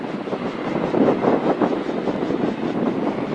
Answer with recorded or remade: recorded